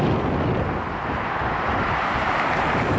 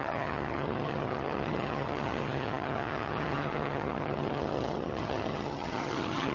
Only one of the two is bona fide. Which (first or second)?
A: first